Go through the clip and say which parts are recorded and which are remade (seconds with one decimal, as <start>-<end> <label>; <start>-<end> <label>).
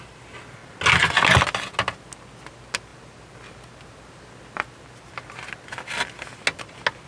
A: 0.0-7.1 recorded